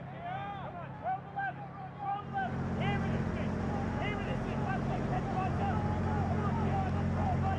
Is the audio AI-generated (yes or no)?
no